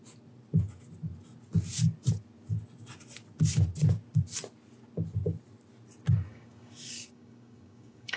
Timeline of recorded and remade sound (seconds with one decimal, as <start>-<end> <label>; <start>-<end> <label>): 0.0-6.3 recorded; 6.3-8.2 remade